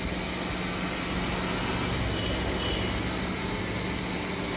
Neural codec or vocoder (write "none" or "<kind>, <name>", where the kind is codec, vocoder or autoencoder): none